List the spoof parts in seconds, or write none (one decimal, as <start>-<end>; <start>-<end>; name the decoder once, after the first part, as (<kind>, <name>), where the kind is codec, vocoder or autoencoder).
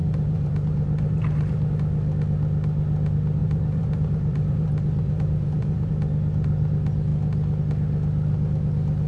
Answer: 0.0-1.7 (vocoder, BigVGAN v2); 3.4-5.9